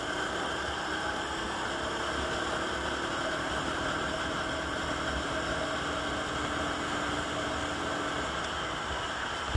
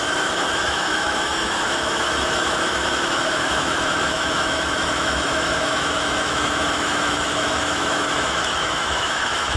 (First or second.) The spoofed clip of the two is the second